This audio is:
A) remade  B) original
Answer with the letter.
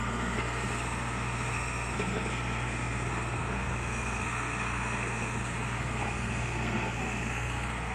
A